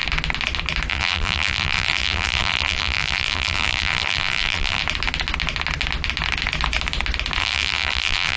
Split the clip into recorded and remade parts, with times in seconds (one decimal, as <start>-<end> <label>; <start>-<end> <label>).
0.0-0.9 recorded; 0.9-4.8 remade; 4.8-7.4 recorded; 7.4-8.4 remade